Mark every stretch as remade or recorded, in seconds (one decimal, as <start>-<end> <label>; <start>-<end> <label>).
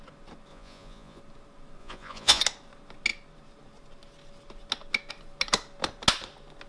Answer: 0.0-0.5 recorded; 0.5-1.2 remade; 1.2-1.8 recorded; 1.8-2.4 remade; 2.4-6.7 recorded